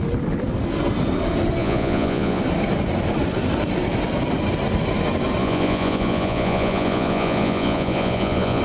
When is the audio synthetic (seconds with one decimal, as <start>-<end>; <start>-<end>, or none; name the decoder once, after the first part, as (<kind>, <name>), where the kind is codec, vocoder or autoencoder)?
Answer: 1.6-2.4 (vocoder, Vocos); 5.4-8.6